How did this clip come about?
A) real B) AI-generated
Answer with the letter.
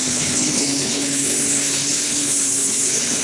B